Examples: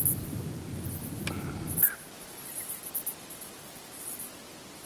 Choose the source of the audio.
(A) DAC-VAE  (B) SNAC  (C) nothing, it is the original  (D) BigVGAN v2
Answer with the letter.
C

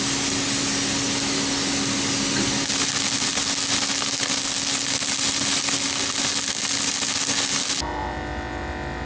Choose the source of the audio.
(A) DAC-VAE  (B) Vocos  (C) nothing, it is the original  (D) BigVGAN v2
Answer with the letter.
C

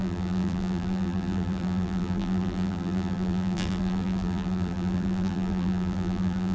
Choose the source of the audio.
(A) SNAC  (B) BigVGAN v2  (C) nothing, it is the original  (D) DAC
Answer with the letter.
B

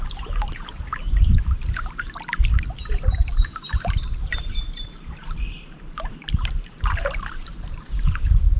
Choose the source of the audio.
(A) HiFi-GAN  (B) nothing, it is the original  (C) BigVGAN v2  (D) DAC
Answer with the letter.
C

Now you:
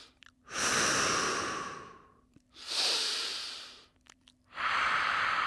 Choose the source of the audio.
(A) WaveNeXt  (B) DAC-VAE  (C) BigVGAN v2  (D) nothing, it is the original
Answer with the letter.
C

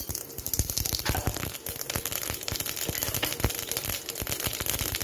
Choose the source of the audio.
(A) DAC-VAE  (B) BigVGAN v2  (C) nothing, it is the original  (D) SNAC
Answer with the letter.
C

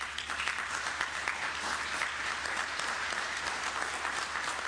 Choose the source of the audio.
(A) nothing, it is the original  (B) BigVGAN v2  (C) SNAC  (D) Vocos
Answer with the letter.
B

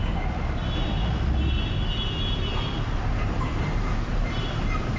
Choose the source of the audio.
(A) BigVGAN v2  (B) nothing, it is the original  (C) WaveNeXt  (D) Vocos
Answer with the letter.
B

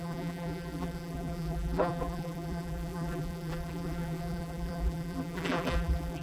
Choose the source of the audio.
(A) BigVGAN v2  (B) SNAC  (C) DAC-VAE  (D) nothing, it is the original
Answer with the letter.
A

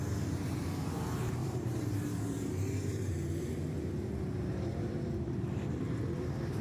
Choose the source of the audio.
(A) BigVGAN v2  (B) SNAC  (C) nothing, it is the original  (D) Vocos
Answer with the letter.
A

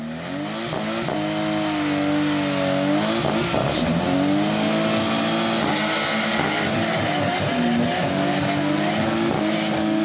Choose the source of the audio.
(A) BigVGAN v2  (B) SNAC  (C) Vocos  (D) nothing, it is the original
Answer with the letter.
D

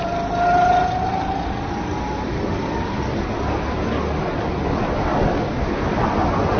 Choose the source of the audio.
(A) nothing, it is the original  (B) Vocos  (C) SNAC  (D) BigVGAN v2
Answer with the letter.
A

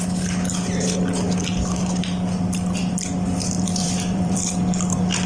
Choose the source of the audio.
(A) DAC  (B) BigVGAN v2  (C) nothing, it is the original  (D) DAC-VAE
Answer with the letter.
B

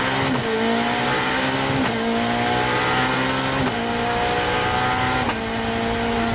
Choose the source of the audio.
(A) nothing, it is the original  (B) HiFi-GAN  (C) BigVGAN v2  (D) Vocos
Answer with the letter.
A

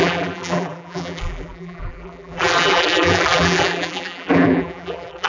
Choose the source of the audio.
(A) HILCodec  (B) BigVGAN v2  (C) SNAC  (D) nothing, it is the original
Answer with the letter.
B